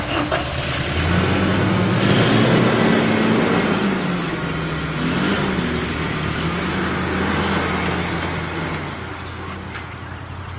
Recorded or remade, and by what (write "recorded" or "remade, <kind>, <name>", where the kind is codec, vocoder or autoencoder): recorded